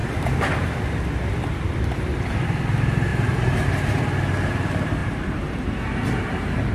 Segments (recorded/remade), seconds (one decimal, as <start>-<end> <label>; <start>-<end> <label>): 0.0-0.6 remade; 0.6-1.5 recorded; 1.5-2.0 remade; 2.0-3.1 recorded; 3.1-4.0 remade; 4.0-5.0 recorded; 5.0-6.7 remade